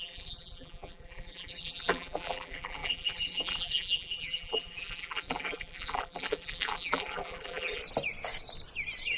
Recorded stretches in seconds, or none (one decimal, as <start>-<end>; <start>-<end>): 7.8-9.2